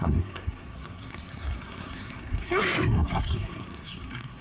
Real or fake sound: fake